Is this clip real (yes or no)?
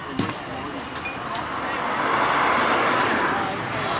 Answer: yes